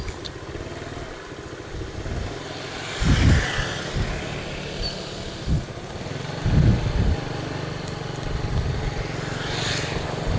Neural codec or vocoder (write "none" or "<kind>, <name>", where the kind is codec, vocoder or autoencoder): none